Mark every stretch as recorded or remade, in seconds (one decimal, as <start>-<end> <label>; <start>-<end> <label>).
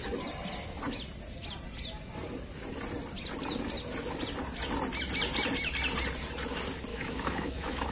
0.0-6.9 recorded; 6.9-7.9 remade